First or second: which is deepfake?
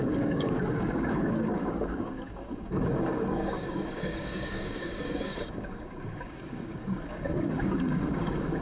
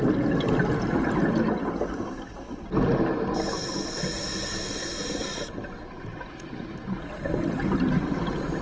first